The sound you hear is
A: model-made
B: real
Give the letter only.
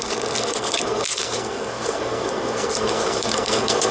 A